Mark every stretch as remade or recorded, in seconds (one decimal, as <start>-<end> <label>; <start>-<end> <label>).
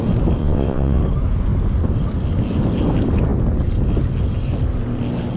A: 0.0-0.4 recorded; 0.4-1.0 remade; 1.0-5.4 recorded